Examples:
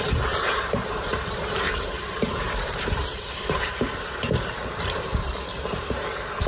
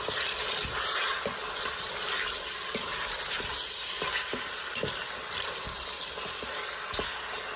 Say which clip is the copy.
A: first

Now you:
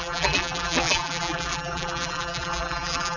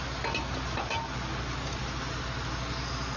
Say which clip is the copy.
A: first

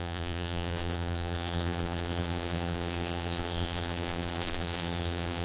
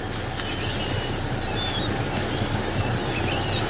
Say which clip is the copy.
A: first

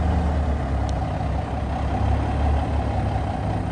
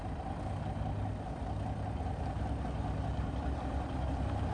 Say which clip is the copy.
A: second